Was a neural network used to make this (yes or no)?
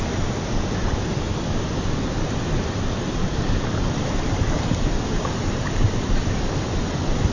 no